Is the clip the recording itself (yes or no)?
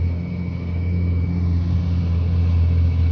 yes